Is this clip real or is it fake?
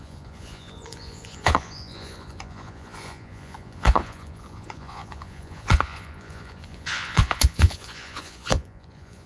fake